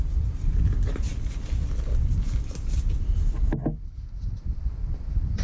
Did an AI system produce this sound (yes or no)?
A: no